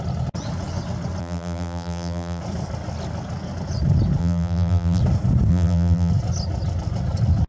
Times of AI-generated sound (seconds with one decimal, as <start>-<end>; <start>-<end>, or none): 1.2-2.4; 4.2-5.0; 5.5-6.1